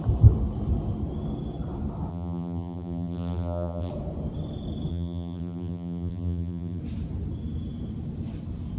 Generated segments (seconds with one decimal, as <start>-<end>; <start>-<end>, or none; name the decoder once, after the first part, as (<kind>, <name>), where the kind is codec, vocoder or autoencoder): 2.1-3.9 (vocoder, BigVGAN v2); 4.9-6.8